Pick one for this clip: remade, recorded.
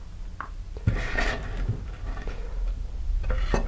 recorded